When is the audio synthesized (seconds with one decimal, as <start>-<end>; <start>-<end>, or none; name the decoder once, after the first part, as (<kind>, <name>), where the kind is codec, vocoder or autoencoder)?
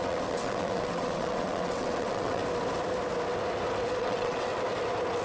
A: 0.0-2.4 (vocoder, WaveNeXt); 4.0-4.5